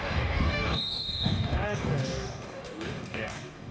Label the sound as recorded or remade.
remade